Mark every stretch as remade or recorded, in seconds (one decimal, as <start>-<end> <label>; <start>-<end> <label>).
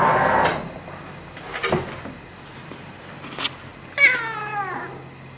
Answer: 0.0-5.4 recorded